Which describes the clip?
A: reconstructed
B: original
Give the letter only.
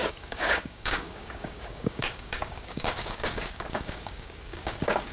A